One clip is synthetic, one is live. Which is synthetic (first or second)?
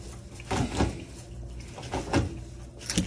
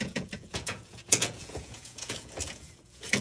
second